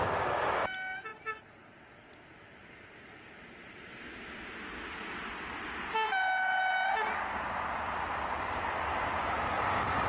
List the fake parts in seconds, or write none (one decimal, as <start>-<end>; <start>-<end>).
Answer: none